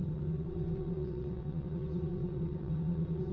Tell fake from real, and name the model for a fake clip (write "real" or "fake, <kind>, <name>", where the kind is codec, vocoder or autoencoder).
fake, vocoder, WaveNeXt